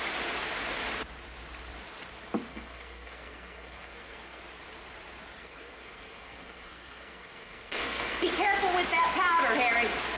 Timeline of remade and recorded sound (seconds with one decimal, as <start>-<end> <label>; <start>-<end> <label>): 0.0-2.5 recorded; 2.5-4.4 remade; 4.4-5.4 recorded; 5.4-8.2 remade; 8.2-10.2 recorded